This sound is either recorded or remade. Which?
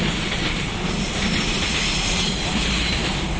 recorded